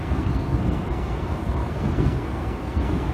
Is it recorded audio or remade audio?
remade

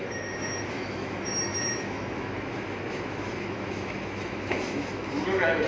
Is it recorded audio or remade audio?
remade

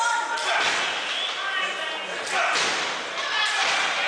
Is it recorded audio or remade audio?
recorded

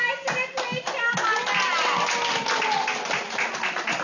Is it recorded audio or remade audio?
recorded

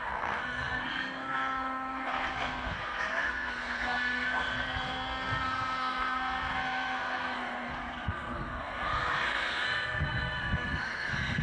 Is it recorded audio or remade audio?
remade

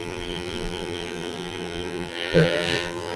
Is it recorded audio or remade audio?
remade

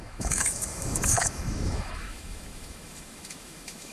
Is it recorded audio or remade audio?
remade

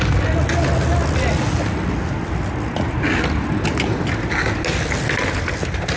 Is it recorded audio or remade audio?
recorded